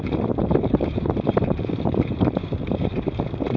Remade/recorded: remade